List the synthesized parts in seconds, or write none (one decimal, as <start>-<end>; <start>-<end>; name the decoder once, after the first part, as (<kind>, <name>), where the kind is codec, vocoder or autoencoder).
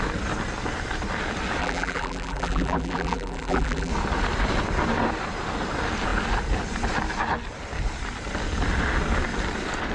1.6-3.9 (vocoder, BigVGAN v2)